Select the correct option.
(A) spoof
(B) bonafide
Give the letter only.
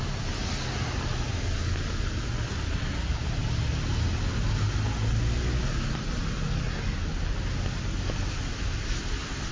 B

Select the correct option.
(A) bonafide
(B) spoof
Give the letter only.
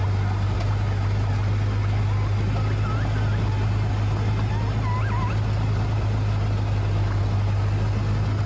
A